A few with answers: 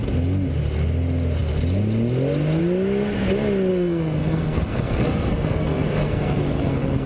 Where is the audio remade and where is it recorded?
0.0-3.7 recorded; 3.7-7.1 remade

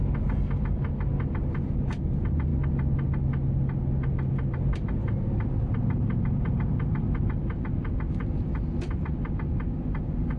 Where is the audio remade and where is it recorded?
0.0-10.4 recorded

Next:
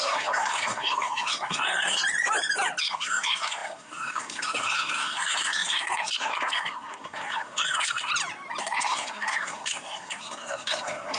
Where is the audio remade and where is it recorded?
0.0-2.0 remade; 2.0-2.8 recorded; 2.8-8.1 remade; 8.1-8.6 recorded; 8.6-11.2 remade